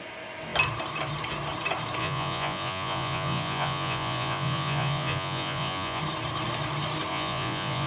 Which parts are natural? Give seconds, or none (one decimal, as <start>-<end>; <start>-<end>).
0.0-2.0; 6.0-7.1